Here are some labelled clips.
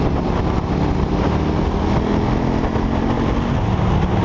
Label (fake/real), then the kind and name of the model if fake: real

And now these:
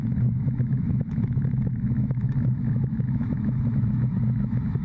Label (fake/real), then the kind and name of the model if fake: fake, autoencoder, DAC-VAE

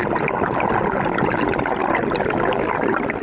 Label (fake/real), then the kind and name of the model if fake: real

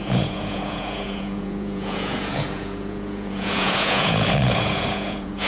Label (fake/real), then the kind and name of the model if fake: fake, vocoder, Vocos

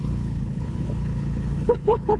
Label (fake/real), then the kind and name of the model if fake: fake, codec, HILCodec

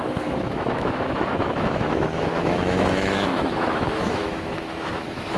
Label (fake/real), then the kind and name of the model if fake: fake, autoencoder, DAC-VAE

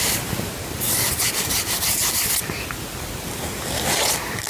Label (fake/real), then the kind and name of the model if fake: real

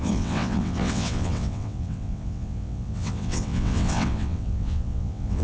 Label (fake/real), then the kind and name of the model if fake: fake, vocoder, WaveNeXt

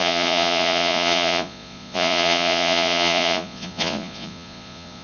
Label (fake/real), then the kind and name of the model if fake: fake, vocoder, Vocos